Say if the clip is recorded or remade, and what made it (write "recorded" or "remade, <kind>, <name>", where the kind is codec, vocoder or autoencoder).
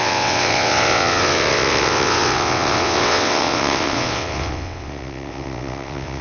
remade, vocoder, WaveNeXt